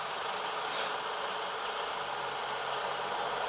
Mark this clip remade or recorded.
recorded